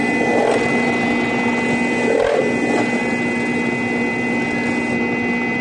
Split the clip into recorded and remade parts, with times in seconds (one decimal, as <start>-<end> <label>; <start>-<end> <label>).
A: 0.0-5.6 recorded